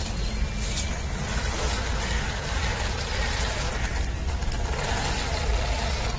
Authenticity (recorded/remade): recorded